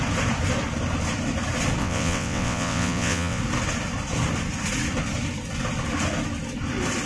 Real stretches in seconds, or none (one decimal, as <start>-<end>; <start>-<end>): 0.0-1.8; 3.4-7.1